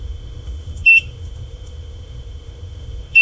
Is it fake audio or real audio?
fake